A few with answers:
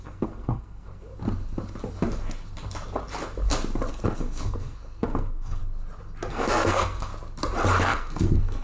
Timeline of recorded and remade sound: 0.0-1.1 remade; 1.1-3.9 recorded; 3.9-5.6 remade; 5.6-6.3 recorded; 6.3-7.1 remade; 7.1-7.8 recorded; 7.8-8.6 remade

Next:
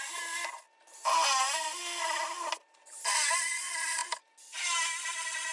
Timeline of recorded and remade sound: 0.0-5.5 recorded

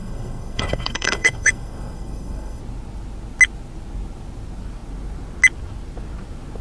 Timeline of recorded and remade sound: 0.0-2.6 remade; 2.6-6.6 recorded

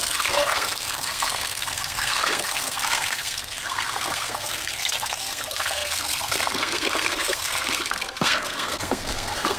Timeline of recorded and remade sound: 0.0-9.6 remade

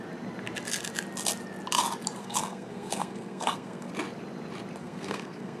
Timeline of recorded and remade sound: 0.0-2.2 recorded; 2.2-3.9 remade; 3.9-4.8 recorded; 4.8-5.6 remade